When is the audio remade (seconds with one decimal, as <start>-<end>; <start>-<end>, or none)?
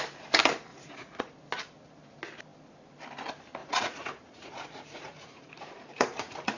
0.7-1.2; 3.6-6.6